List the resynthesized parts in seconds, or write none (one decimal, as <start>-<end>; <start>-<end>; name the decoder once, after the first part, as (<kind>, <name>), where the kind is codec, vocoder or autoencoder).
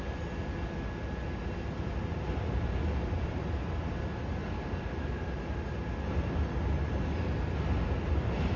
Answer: none